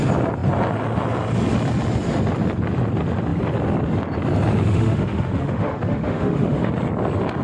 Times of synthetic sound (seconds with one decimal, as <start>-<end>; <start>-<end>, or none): 4.6-6.7